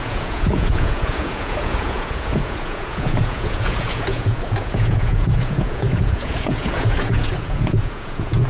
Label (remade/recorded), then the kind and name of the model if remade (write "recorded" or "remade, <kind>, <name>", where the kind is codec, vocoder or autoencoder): remade, vocoder, Vocos